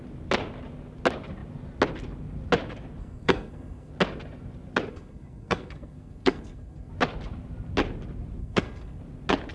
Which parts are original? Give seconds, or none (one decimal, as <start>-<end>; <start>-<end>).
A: 0.0-3.0; 3.9-4.9; 6.9-8.4; 9.0-9.5